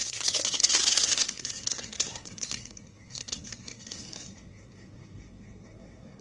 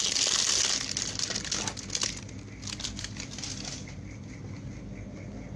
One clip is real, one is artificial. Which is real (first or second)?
second